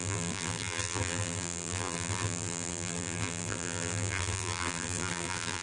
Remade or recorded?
remade